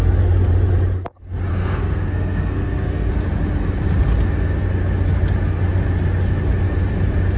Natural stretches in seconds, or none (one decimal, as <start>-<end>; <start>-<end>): 0.0-1.5; 3.1-7.4